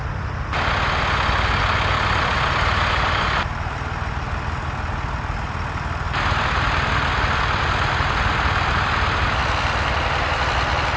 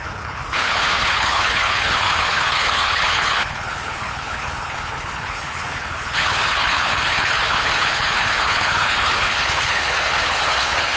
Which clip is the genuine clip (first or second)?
first